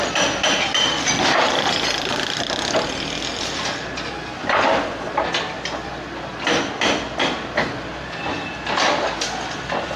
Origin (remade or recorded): recorded